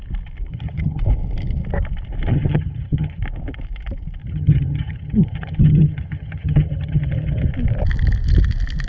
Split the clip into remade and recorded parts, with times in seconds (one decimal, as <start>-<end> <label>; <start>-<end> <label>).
0.0-0.5 recorded; 0.5-1.0 remade; 1.0-2.3 recorded; 2.3-3.2 remade; 3.2-4.2 recorded; 4.2-7.5 remade; 7.5-8.9 recorded

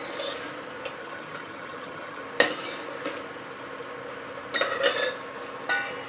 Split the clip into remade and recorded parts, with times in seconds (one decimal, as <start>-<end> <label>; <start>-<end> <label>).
0.0-1.0 recorded; 1.0-2.2 remade; 2.2-6.1 recorded

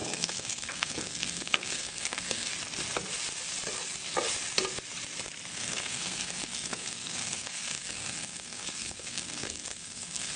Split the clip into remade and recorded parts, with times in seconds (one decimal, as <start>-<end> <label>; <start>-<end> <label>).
0.0-2.5 remade; 2.5-5.5 recorded; 5.5-10.4 remade

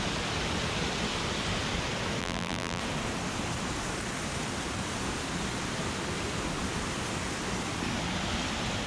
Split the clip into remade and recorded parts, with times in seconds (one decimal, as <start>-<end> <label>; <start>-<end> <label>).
0.0-2.2 recorded; 2.2-2.8 remade; 2.8-8.9 recorded

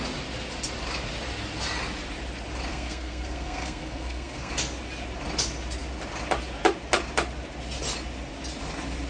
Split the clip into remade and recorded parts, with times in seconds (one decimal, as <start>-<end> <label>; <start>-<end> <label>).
0.0-2.7 recorded; 2.7-4.5 remade; 4.5-9.1 recorded

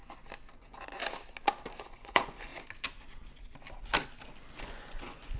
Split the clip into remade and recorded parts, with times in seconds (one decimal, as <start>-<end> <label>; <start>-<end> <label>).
0.0-0.6 recorded; 0.6-1.0 remade; 1.0-1.8 recorded; 1.8-2.5 remade; 2.5-4.6 recorded; 4.6-5.4 remade